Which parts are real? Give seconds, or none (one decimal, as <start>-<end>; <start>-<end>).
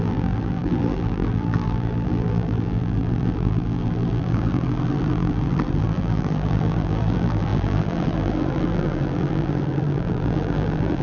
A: none